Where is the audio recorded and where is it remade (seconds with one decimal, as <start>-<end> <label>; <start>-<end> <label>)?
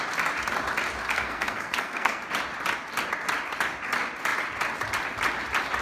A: 0.0-1.0 recorded; 1.0-2.2 remade; 2.2-5.8 recorded